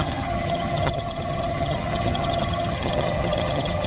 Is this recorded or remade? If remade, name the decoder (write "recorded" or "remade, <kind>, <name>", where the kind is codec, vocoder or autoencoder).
remade, vocoder, HiFi-GAN